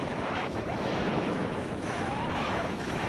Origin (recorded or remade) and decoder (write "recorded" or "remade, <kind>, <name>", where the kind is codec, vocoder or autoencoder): remade, autoencoder, DAC-VAE